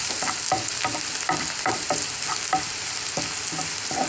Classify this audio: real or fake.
real